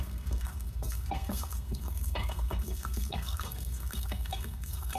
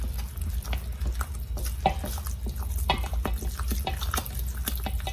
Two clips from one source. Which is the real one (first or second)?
second